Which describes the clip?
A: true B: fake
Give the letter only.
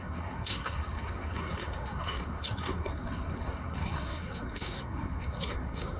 B